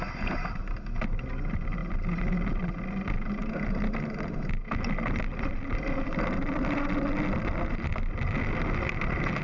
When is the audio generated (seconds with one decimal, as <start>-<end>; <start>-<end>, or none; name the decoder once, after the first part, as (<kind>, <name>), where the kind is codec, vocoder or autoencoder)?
none